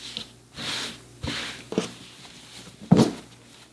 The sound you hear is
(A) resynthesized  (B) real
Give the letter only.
B